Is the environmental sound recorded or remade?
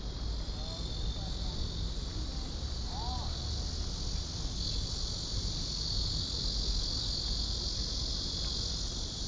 recorded